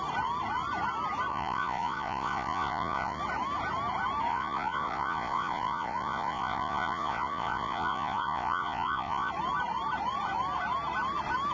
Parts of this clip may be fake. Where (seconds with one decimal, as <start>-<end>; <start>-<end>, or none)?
1.3-3.2; 4.3-9.3